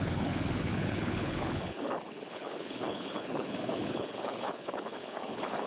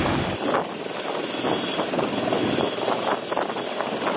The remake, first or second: first